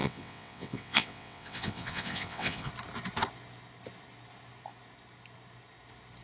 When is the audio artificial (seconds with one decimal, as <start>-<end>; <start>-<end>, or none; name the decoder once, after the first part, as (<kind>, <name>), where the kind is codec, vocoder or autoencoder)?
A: 0.0-2.7 (vocoder, WaveNeXt)